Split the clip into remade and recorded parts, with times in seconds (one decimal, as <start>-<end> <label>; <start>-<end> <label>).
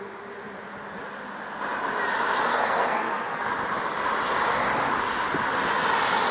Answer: 0.0-2.5 recorded; 2.5-3.5 remade; 3.5-6.3 recorded